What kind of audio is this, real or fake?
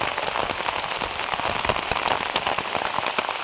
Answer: real